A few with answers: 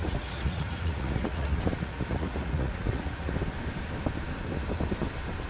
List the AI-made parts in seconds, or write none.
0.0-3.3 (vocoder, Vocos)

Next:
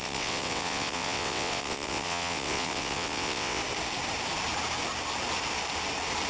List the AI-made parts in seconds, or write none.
0.0-3.6 (vocoder, WaveNeXt)

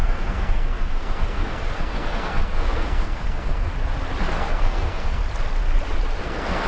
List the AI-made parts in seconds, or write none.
0.0-3.7 (codec, SNAC); 4.3-5.2; 6.2-6.7